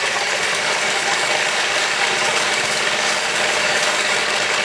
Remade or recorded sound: remade